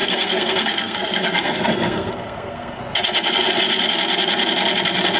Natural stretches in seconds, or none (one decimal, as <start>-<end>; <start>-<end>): 2.8-5.2